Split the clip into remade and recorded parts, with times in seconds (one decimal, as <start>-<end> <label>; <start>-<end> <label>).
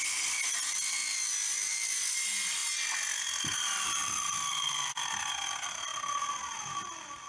0.0-7.3 recorded